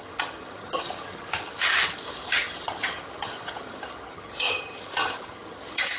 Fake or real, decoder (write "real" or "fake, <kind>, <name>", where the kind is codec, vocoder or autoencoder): fake, vocoder, HiFi-GAN